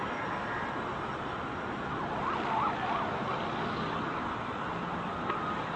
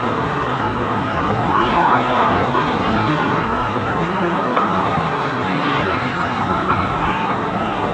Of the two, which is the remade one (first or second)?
second